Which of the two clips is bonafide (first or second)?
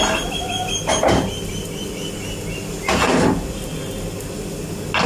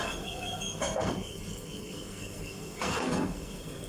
first